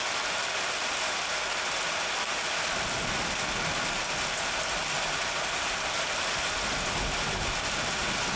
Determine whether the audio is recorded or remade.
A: recorded